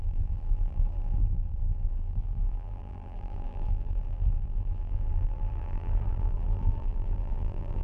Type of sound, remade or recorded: remade